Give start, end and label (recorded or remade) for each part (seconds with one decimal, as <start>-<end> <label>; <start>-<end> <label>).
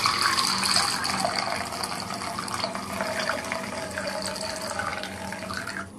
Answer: 0.0-6.0 recorded